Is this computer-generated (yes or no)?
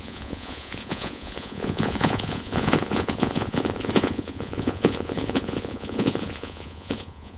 yes